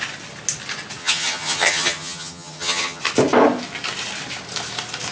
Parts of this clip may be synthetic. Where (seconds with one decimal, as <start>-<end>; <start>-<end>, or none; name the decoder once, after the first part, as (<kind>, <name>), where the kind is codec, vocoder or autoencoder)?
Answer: 1.0-3.0 (vocoder, HiFi-GAN)